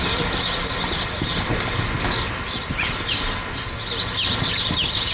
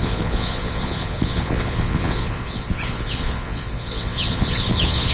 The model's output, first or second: second